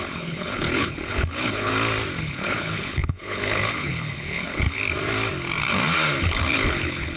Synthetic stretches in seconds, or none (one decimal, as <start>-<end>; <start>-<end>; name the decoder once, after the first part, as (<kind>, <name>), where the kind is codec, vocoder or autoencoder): 0.0-1.7 (codec, HILCodec); 2.2-4.8; 6.2-7.2